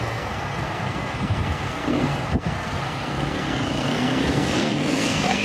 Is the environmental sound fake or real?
fake